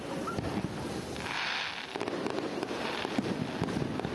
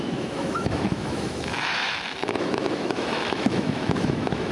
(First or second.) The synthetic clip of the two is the second